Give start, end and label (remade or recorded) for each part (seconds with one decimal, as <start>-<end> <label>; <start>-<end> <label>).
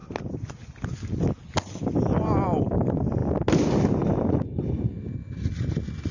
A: 0.0-6.1 recorded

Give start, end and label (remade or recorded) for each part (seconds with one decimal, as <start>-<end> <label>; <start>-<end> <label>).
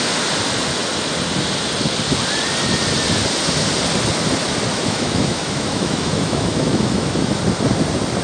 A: 0.0-4.7 recorded; 4.7-7.4 remade; 7.4-8.2 recorded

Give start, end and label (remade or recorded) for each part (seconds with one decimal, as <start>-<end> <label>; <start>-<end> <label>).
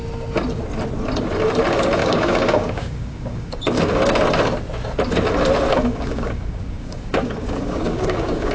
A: 0.0-2.0 recorded; 2.0-3.9 remade; 3.9-5.7 recorded; 5.7-8.5 remade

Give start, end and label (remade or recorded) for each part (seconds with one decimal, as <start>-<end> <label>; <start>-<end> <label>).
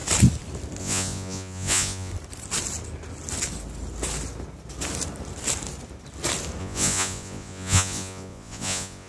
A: 0.0-0.8 recorded; 0.8-2.1 remade; 2.1-6.6 recorded; 6.6-9.1 remade